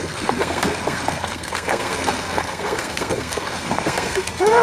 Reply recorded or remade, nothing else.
remade